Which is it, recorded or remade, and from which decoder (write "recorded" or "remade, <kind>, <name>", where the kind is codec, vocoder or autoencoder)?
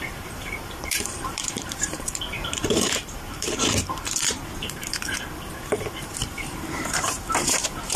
remade, vocoder, BigVGAN v2